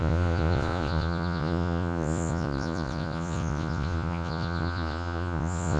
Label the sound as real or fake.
fake